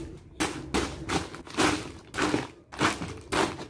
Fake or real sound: real